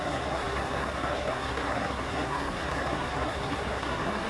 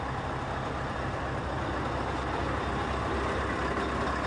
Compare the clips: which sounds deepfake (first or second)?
first